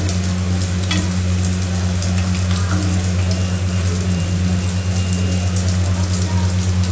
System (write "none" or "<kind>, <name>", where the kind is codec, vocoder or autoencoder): none